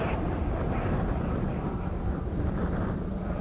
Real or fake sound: real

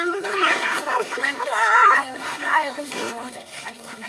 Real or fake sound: fake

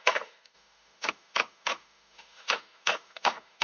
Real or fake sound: fake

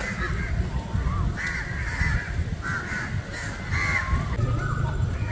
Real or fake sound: real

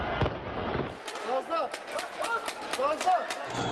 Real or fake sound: real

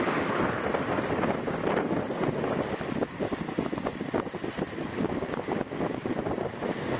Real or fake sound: real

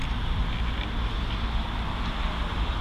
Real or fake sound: real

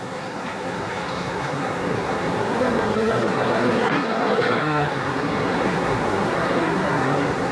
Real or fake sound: fake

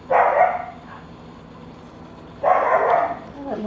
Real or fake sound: real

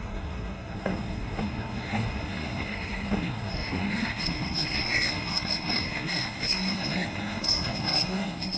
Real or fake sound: fake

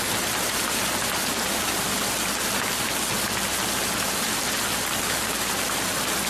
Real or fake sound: real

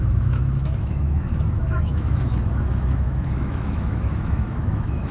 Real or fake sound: fake